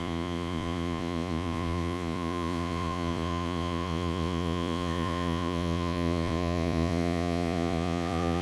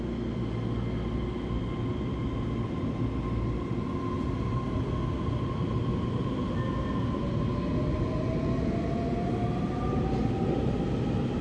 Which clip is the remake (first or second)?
first